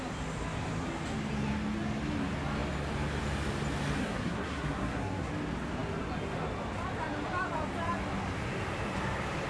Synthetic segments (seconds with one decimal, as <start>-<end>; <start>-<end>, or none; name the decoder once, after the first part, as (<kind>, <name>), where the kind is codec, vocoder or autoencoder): 4.0-5.3 (codec, SNAC)